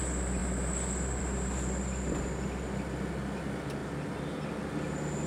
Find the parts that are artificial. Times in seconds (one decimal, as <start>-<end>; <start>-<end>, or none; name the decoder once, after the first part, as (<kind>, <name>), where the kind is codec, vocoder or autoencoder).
none